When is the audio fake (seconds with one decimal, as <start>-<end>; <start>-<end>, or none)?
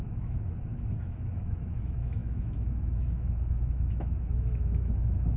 0.0-5.4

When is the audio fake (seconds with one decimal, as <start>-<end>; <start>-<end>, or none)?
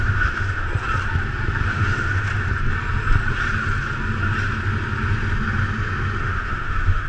0.0-0.6; 1.7-2.3; 6.2-7.1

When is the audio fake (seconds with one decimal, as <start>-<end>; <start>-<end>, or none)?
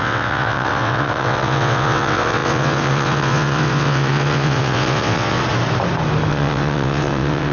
0.0-5.4; 6.3-7.5